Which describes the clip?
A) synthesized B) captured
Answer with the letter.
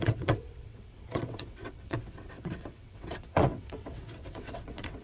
A